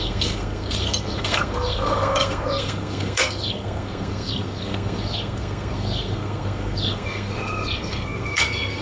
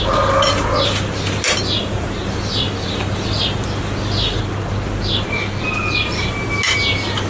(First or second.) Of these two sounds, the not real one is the first